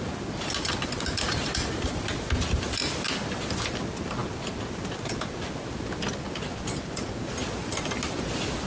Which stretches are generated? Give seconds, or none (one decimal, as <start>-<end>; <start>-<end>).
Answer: none